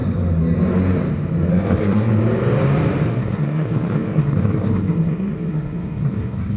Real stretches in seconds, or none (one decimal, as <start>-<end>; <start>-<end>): 0.0-1.5; 2.1-3.1